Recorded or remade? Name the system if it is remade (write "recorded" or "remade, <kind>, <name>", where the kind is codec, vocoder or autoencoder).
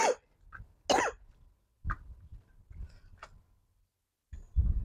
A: recorded